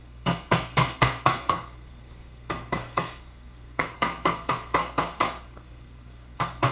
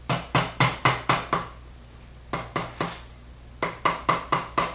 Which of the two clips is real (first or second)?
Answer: second